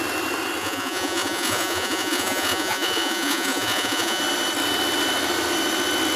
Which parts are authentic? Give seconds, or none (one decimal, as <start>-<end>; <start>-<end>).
0.0-0.6; 4.2-6.2